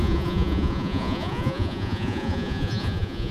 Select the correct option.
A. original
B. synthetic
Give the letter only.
B